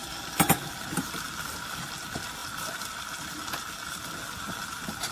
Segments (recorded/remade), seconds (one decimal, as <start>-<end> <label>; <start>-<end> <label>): 0.0-5.1 recorded